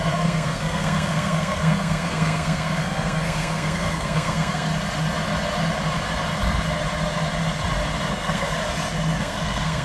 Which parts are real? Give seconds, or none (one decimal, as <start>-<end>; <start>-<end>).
4.7-8.1; 8.6-9.2